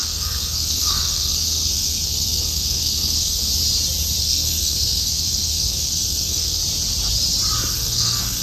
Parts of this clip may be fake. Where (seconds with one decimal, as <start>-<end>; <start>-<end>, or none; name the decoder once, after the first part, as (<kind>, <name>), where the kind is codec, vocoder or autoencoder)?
0.0-3.5 (codec, SNAC); 4.2-6.6; 7.7-8.4